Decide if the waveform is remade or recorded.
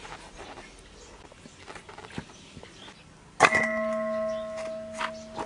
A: recorded